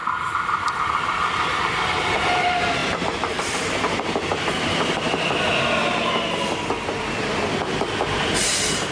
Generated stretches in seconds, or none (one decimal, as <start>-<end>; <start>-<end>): 0.0-1.6; 2.8-5.5